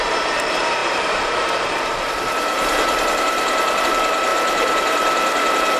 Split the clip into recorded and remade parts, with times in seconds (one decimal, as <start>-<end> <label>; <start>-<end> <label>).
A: 0.0-5.8 remade